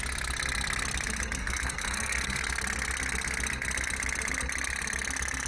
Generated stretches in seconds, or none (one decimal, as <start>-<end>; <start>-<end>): 1.4-2.4